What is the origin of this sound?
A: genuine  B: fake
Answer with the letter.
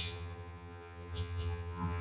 B